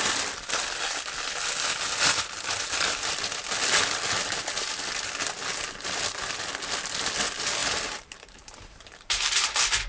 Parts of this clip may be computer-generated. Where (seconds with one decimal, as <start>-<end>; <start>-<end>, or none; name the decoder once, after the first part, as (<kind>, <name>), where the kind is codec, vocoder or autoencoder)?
7.6-9.9 (vocoder, BigVGAN v2)